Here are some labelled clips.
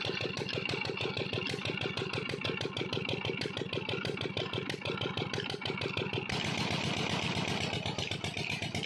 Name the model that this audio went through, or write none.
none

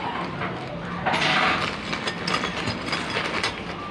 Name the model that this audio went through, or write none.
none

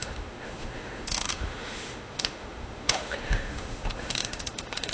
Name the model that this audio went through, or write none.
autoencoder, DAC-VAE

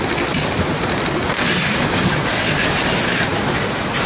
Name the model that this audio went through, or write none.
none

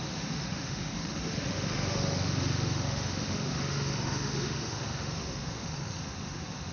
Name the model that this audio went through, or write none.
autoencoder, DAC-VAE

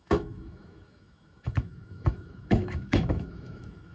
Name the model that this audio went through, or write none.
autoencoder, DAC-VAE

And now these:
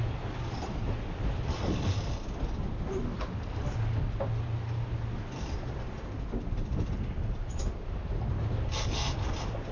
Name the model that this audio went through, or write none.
none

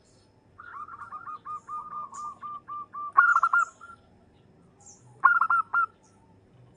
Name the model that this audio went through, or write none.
none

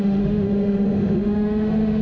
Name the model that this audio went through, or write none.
autoencoder, DAC-VAE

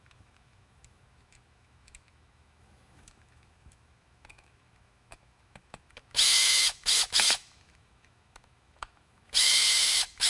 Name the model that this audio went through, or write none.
autoencoder, DAC-VAE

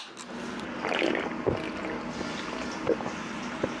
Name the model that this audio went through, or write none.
none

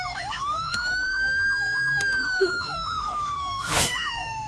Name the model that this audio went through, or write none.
autoencoder, DAC-VAE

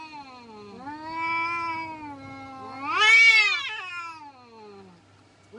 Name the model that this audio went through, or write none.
none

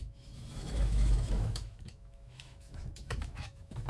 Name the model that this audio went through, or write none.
autoencoder, DAC-VAE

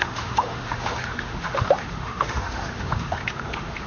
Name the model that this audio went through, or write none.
autoencoder, DAC-VAE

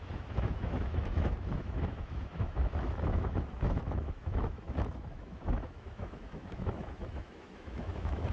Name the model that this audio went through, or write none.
autoencoder, DAC-VAE